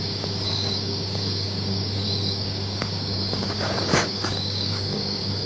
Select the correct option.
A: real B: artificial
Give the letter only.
B